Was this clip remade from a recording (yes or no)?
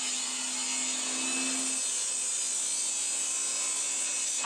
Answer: no